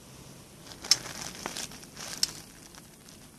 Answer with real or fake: real